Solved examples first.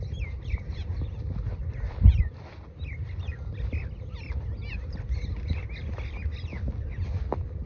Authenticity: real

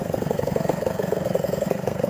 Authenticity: fake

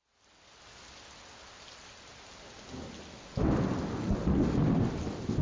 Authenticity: real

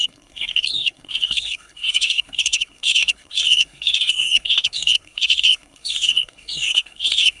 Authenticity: fake